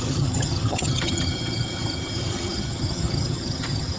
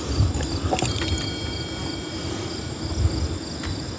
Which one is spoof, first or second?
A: first